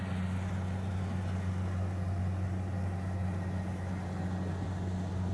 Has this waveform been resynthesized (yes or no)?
no